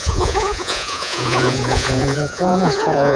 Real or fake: fake